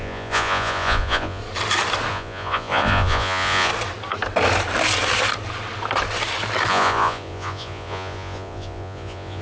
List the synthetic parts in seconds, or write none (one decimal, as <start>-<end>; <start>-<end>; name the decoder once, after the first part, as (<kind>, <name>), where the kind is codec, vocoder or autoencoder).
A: 0.0-1.4 (vocoder, Vocos); 2.1-3.7; 6.7-9.4